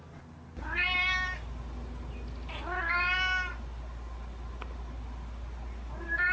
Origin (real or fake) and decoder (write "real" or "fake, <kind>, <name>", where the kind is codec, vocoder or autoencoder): real